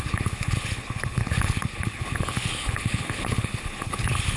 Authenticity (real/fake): fake